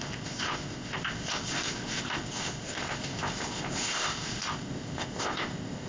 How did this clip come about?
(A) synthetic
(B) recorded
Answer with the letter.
A